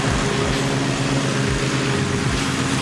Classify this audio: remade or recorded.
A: recorded